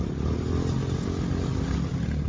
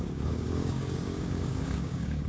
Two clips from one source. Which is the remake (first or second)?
second